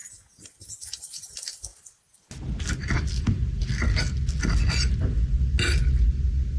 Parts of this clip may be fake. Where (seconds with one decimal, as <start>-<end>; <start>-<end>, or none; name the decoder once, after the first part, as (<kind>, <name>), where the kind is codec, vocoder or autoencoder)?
none